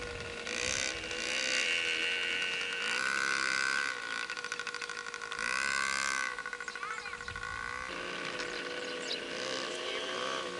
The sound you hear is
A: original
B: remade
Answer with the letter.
A